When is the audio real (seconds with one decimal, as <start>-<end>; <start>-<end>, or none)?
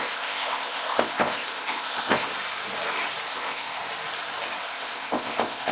2.3-3.3; 3.8-4.6